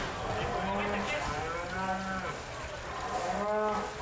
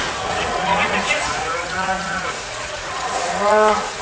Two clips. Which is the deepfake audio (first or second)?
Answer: second